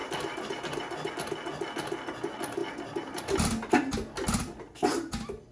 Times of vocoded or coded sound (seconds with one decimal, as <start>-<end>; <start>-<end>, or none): 0.0-1.1; 2.6-3.7